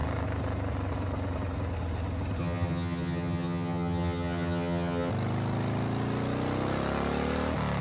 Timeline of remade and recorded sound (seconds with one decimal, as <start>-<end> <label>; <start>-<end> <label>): 0.0-2.4 recorded; 2.4-5.1 remade; 5.1-7.8 recorded